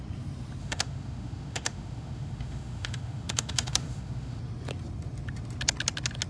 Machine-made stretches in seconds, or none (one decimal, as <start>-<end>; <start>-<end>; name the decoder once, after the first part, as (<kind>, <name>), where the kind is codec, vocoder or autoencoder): 0.6-4.4 (autoencoder, DAC-VAE)